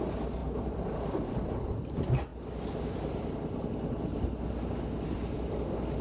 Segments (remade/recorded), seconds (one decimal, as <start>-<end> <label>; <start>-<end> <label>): 0.0-0.4 recorded; 0.4-1.8 remade; 1.8-6.0 recorded